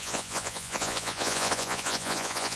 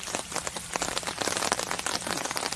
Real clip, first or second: second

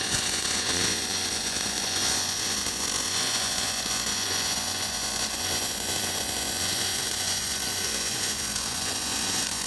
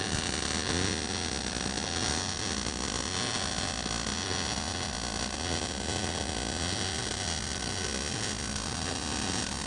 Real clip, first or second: second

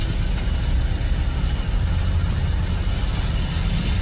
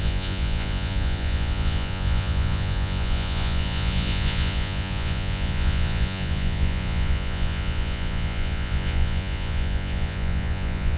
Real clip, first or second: first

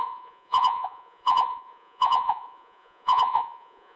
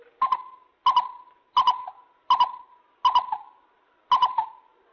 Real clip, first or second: second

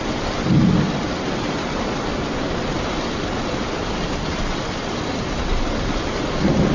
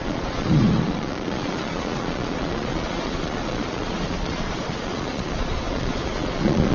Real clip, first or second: first